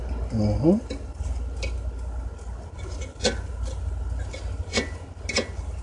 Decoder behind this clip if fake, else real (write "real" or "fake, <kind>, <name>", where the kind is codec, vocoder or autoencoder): real